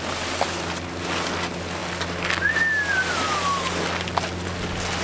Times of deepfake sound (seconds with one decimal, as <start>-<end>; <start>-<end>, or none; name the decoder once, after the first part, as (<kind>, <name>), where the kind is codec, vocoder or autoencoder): none